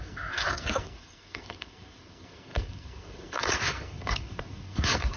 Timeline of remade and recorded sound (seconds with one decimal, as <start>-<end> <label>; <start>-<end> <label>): 0.0-5.2 remade